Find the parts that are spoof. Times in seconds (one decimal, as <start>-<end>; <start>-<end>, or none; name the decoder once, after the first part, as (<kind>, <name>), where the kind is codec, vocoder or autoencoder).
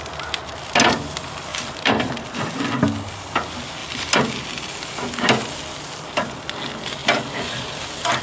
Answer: 1.5-2.8 (vocoder, BigVGAN v2); 3.8-4.8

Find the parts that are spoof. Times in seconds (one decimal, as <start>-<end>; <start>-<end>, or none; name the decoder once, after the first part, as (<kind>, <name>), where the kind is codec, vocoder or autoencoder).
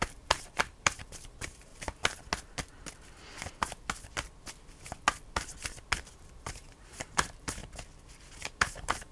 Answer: 0.0-1.7 (vocoder, BigVGAN v2); 6.1-7.6; 8.5-9.1